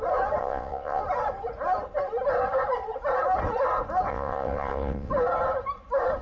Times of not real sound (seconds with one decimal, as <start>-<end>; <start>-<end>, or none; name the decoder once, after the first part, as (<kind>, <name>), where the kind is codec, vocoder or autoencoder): 0.4-1.0 (vocoder, WaveNeXt); 4.1-5.1